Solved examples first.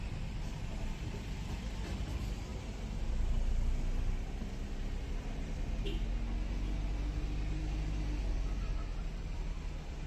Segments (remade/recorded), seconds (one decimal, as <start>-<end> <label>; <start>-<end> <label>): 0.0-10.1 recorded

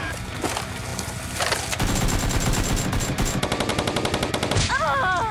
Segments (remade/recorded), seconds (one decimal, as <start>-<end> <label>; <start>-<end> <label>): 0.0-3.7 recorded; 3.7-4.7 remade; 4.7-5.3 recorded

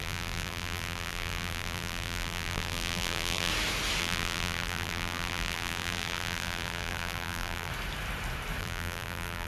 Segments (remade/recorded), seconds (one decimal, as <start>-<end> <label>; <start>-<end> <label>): 0.0-3.5 remade; 3.5-4.0 recorded; 4.0-7.7 remade; 7.7-8.6 recorded; 8.6-9.5 remade

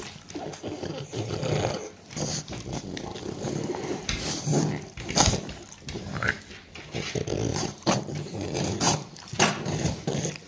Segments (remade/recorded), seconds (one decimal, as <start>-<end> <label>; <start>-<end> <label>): 0.0-3.9 recorded; 3.9-4.6 remade; 4.6-7.5 recorded; 7.5-10.1 remade; 10.1-10.5 recorded

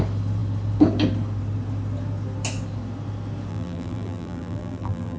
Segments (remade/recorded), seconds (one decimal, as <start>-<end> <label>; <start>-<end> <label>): 0.0-3.5 recorded; 3.5-5.2 remade